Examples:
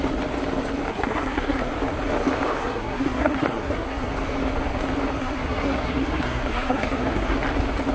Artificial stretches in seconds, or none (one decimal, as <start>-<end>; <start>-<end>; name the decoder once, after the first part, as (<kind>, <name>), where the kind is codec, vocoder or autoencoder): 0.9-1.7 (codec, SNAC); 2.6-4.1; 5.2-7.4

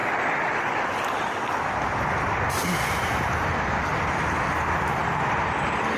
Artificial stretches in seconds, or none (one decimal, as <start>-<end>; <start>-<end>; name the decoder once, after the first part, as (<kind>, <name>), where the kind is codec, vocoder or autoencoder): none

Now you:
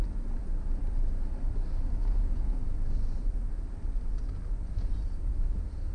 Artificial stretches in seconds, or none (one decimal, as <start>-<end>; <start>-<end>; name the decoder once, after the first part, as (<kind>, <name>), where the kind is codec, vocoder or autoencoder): 2.0-2.8 (vocoder, Vocos)

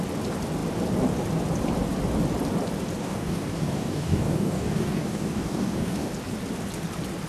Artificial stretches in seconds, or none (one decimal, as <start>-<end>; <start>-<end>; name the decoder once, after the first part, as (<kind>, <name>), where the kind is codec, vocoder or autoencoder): 3.0-6.1 (codec, DAC)